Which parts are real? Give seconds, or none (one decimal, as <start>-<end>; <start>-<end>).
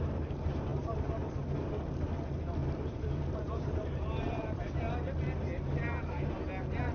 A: 0.0-0.7; 1.3-2.6; 4.9-6.9